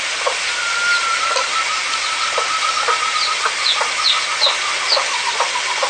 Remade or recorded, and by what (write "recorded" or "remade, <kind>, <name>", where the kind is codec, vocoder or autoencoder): recorded